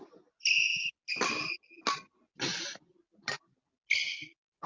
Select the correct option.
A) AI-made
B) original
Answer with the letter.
B